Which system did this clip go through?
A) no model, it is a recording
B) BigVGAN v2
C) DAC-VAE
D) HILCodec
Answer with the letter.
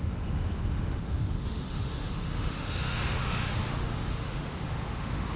C